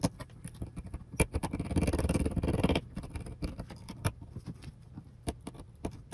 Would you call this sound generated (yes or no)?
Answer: yes